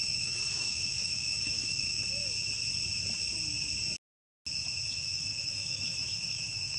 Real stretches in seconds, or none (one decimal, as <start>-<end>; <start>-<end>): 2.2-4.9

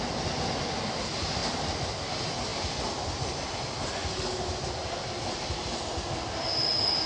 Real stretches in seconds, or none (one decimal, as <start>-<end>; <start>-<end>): 0.0-7.1

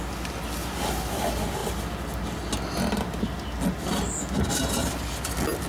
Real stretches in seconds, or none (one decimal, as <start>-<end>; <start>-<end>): 0.0-5.7

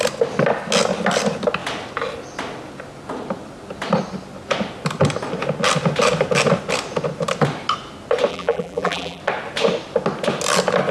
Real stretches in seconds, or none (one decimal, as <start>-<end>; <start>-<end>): 0.0-8.3; 9.2-10.9